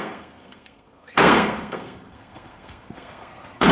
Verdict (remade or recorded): remade